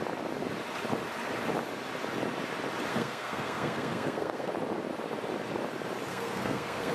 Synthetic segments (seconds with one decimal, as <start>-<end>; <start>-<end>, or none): 2.9-4.5; 6.1-6.9